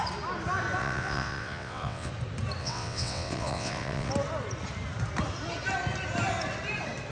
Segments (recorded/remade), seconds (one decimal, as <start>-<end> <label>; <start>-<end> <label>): 0.0-0.8 recorded; 0.8-2.1 remade; 2.1-2.6 recorded; 2.6-4.1 remade; 4.1-7.1 recorded